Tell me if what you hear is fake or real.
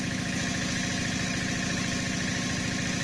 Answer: real